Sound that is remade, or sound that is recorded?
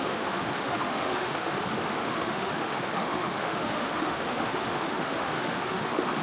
remade